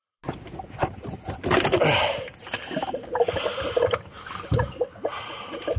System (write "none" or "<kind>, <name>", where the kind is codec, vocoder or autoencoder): none